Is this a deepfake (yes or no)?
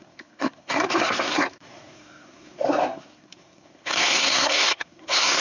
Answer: yes